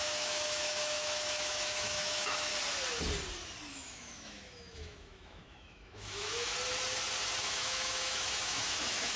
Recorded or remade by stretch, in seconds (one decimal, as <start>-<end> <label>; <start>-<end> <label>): 0.0-2.5 remade; 2.5-3.7 recorded; 3.7-6.5 remade; 6.5-7.4 recorded; 7.4-9.2 remade